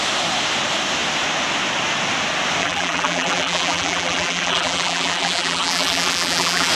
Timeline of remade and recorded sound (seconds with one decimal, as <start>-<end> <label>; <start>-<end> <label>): 0.0-2.6 recorded; 2.6-6.7 remade